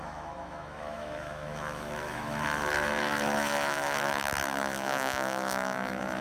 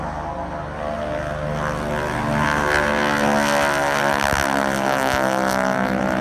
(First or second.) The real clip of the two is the second